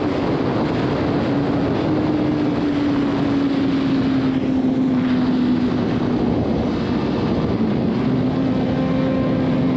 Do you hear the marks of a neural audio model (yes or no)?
no